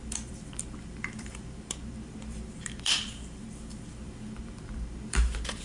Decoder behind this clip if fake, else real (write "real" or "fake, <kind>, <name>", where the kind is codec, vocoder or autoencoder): fake, vocoder, BigVGAN v2